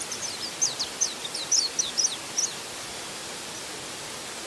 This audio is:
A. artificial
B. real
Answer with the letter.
B